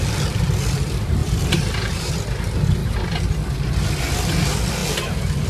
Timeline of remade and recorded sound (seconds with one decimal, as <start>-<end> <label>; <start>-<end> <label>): 0.0-1.2 recorded; 1.2-2.1 remade; 2.1-5.5 recorded